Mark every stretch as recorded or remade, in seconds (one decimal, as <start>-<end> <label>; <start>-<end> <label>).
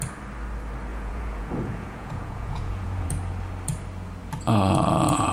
0.0-0.9 recorded; 0.9-3.1 remade; 3.1-5.3 recorded